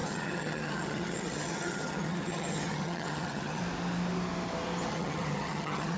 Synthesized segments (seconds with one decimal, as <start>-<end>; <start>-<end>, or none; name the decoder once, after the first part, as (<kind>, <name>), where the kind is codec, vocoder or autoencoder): 0.0-3.6 (vocoder, HiFi-GAN); 4.9-6.0